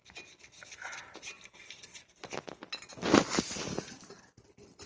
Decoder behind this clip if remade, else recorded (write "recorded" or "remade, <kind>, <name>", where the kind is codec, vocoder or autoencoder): recorded